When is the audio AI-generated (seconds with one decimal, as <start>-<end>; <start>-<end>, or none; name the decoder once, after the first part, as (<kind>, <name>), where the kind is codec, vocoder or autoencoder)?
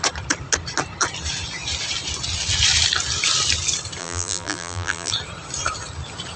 4.0-5.1 (vocoder, BigVGAN v2)